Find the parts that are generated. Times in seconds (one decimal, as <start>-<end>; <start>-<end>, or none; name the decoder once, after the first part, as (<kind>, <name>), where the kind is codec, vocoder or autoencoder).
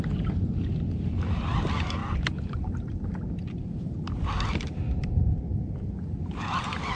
2.0-3.3 (vocoder, BigVGAN v2); 5.5-7.0